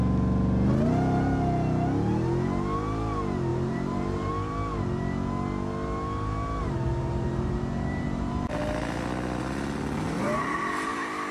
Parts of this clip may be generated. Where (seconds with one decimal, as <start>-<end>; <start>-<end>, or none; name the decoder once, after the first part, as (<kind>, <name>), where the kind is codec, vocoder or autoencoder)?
3.5-4.3 (vocoder, BigVGAN v2); 6.6-8.6